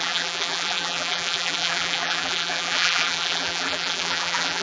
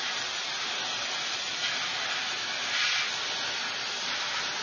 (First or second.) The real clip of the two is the second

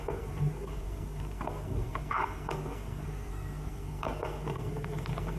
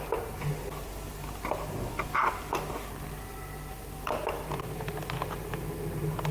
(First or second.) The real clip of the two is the second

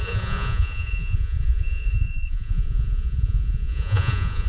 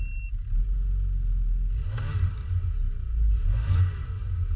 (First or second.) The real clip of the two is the second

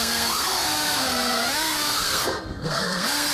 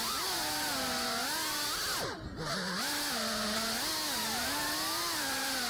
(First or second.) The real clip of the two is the second